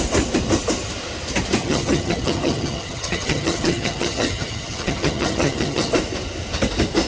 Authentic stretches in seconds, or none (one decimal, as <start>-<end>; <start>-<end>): 0.0-1.6; 5.9-7.1